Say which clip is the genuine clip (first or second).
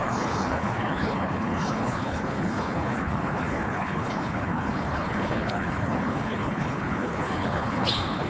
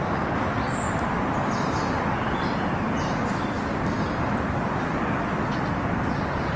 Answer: second